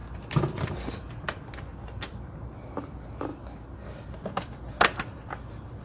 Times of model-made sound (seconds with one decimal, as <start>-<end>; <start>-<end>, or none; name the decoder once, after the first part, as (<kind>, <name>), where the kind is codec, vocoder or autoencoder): 1.7-2.3 (vocoder, BigVGAN v2)